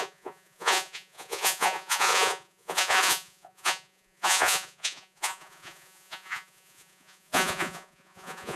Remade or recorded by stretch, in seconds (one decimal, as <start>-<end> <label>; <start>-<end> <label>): 0.0-8.6 remade